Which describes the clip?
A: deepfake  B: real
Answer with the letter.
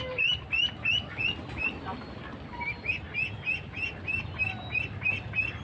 B